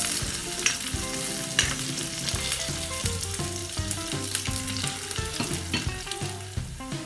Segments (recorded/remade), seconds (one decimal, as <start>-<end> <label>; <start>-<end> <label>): 0.0-7.1 recorded